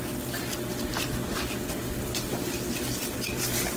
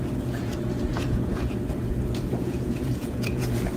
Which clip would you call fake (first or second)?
second